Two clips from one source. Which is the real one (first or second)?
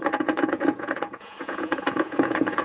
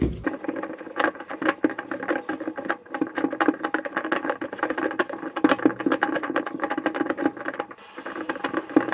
second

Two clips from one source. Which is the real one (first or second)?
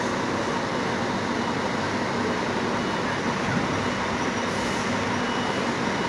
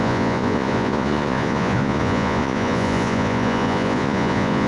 first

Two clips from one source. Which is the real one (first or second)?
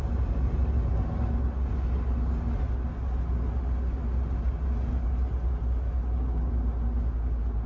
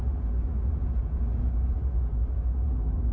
first